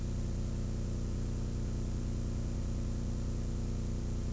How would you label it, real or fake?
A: real